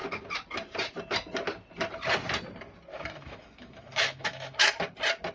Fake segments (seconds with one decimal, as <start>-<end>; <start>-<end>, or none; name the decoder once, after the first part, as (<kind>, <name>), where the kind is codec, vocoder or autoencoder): 2.9-4.7 (autoencoder, DAC-VAE)

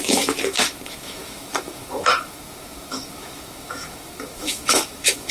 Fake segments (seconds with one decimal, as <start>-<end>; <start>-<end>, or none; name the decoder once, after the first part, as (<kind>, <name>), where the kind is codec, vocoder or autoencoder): 0.0-5.3 (autoencoder, DAC-VAE)

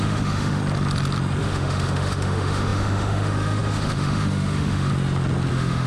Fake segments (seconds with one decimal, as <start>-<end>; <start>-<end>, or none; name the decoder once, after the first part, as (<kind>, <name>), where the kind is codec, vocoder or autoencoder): 0.0-0.6 (autoencoder, DAC-VAE); 1.4-4.9; 5.5-5.9